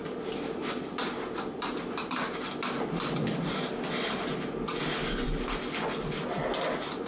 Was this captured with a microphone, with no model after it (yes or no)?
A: yes